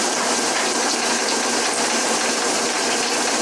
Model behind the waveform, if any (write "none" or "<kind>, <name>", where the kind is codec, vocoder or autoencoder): vocoder, BigVGAN v2